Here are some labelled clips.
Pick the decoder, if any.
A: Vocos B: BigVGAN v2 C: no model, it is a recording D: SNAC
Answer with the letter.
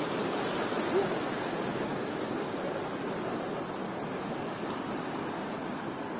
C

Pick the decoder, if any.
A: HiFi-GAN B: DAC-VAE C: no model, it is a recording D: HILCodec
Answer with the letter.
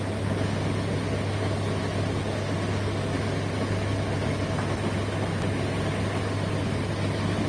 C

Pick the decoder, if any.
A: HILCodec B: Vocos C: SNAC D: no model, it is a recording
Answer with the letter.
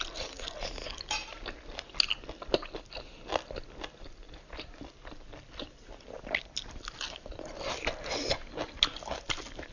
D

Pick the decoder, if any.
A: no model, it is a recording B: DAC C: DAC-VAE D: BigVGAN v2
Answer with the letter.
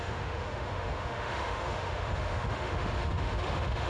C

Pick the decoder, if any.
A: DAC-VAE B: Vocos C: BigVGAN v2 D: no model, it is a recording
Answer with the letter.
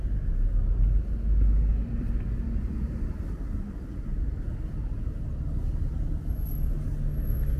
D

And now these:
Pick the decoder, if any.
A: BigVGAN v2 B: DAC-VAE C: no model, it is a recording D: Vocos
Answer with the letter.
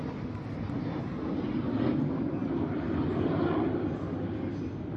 C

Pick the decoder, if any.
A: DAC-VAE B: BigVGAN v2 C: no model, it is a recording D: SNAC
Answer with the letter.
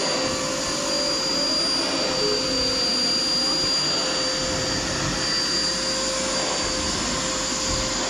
C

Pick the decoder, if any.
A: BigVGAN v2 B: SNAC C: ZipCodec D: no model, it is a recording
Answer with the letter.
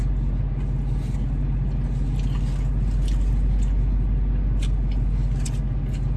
D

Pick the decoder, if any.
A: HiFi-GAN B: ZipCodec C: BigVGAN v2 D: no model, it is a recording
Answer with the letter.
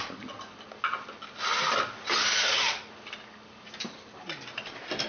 D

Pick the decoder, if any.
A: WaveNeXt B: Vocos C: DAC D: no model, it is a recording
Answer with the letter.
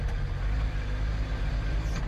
D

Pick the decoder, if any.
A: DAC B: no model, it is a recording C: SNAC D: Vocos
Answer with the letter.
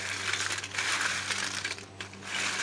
B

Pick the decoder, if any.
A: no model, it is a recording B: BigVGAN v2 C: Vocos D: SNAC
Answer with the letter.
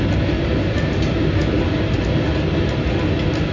A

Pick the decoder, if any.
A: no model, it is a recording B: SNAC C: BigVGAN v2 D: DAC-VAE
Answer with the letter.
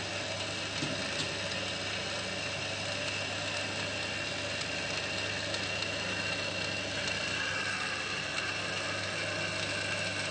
A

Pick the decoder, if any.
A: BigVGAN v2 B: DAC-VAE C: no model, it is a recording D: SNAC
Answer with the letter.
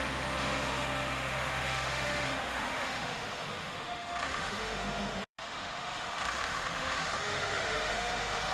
B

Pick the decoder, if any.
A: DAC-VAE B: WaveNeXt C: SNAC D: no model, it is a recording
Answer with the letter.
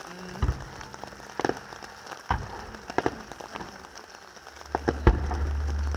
D